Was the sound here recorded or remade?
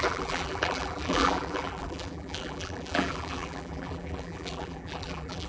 remade